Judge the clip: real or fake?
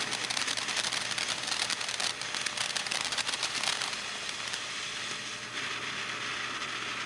real